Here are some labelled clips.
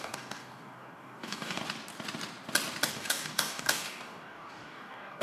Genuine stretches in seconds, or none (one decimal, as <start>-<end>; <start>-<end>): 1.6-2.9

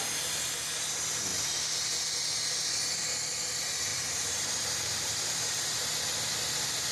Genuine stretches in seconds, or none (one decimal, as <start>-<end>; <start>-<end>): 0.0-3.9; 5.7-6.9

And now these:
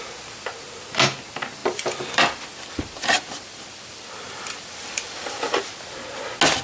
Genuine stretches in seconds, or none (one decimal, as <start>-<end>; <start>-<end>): 0.0-1.6; 5.6-6.6

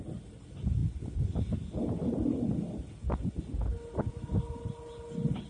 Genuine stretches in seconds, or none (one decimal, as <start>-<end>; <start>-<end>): 0.0-5.5

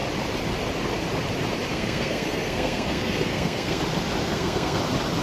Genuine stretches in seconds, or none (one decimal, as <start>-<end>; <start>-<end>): 0.0-1.7; 3.8-4.2; 4.8-5.2